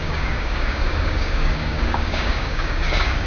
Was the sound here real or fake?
fake